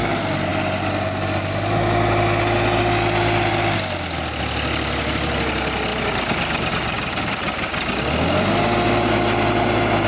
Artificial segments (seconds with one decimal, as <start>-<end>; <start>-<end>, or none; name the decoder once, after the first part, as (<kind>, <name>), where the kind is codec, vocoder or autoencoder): none